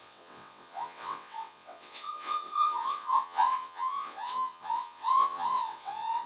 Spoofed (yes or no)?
yes